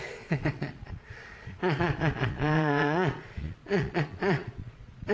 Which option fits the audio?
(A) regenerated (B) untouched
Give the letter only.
A